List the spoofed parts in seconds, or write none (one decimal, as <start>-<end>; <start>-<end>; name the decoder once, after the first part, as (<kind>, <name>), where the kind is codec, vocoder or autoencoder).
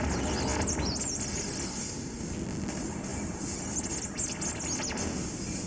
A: 1.7-2.2 (codec, SNAC)